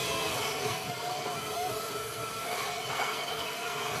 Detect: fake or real fake